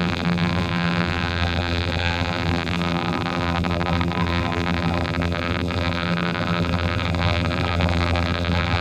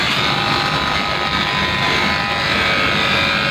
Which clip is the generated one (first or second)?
first